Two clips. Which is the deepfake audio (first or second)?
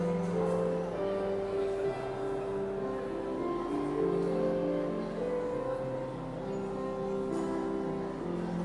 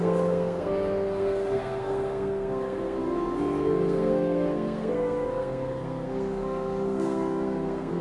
second